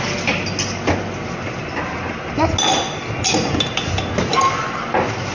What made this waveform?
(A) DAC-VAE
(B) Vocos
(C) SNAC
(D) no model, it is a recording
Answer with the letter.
D